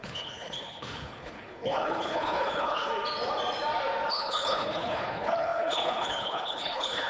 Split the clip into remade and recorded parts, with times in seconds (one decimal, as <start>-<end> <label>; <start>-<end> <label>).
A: 0.0-2.9 remade; 2.9-4.1 recorded; 4.1-7.1 remade